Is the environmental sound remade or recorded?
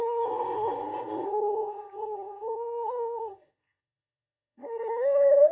remade